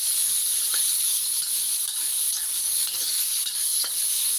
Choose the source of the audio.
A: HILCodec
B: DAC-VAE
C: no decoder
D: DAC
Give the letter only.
D